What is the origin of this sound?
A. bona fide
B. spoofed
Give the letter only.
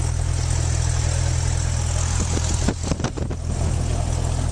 A